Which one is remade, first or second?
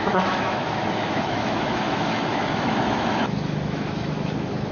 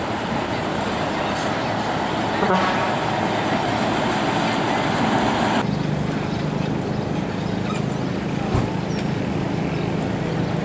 first